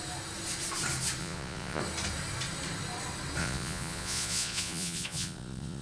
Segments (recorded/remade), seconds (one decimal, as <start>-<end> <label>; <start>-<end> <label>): 0.0-1.2 recorded; 1.2-1.8 remade; 1.8-3.4 recorded; 3.4-5.8 remade